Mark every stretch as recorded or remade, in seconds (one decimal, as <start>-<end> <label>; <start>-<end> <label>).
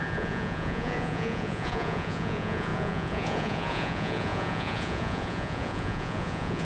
0.0-6.6 remade